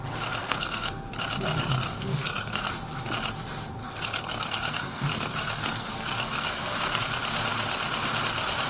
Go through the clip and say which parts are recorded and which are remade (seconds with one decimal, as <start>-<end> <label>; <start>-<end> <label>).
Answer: 0.0-0.4 recorded; 0.4-1.1 remade; 1.1-1.6 recorded; 1.6-2.7 remade; 2.7-3.8 recorded; 3.8-7.0 remade; 7.0-8.7 recorded